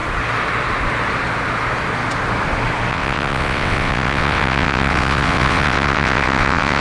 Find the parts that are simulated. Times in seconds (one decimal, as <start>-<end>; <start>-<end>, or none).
2.9-6.8